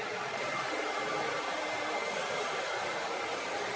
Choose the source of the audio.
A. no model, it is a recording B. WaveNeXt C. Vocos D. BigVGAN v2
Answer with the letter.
D